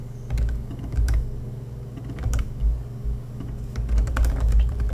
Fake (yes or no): yes